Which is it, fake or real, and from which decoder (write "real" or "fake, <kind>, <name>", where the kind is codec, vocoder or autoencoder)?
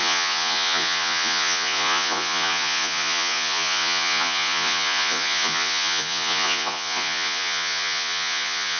fake, vocoder, Vocos